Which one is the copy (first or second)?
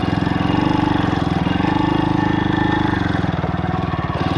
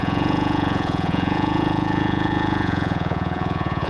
second